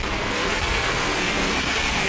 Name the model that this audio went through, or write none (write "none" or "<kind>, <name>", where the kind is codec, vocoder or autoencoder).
codec, SNAC